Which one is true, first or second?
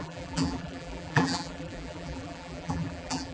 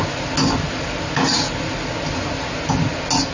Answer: second